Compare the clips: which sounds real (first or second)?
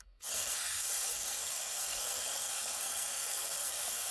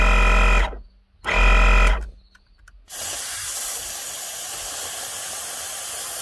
second